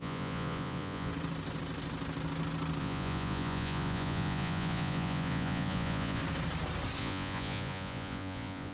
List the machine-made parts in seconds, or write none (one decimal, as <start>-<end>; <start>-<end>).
0.0-1.1; 2.8-6.2; 7.0-8.7